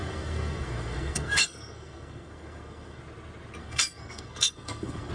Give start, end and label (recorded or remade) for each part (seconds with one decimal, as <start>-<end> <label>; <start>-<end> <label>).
0.0-3.0 remade; 3.0-3.6 recorded; 3.6-5.1 remade